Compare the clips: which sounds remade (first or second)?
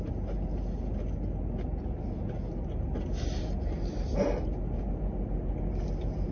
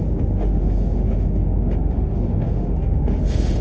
second